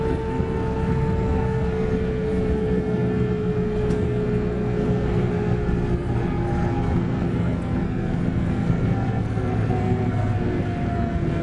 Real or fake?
fake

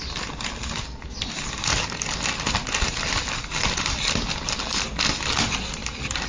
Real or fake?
real